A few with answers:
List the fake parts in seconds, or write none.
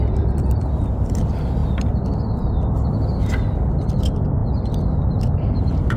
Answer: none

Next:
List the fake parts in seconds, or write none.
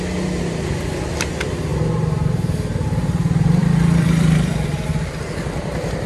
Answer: 3.6-4.5 (vocoder, BigVGAN v2)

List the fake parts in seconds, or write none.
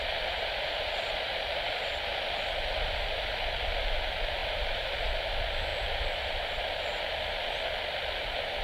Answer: 4.4-5.3 (vocoder, BigVGAN v2); 5.7-7.1